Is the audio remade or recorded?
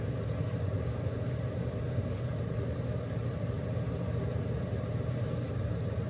remade